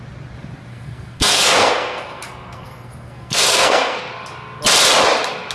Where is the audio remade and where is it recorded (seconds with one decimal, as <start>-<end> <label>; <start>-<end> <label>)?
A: 0.0-0.7 recorded; 0.7-4.0 remade; 4.0-5.5 recorded